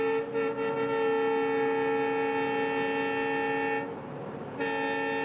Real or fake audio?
real